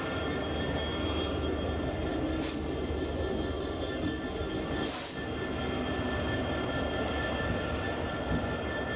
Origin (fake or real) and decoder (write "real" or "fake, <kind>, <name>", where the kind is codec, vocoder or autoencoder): real